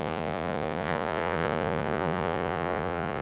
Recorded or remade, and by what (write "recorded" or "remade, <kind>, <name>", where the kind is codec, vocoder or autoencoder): remade, vocoder, Vocos